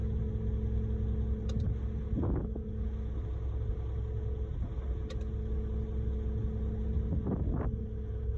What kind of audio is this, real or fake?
real